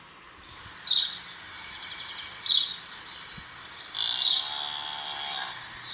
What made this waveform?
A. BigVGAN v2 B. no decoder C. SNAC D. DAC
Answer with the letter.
B